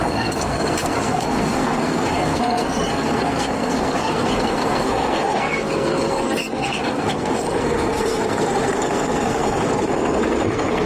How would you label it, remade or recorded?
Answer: remade